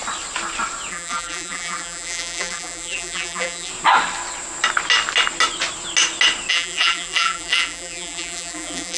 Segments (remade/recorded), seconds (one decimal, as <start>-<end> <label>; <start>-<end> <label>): 0.0-0.9 recorded; 0.9-3.7 remade; 3.7-6.5 recorded; 6.5-9.0 remade